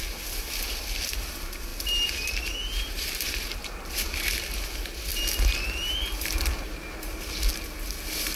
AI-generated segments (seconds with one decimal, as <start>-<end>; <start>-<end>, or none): 1.7-4.2